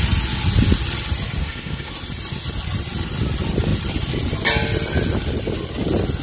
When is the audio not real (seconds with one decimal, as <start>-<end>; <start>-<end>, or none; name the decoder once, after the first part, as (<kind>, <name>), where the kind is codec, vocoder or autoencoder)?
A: 1.4-1.9 (codec, SNAC)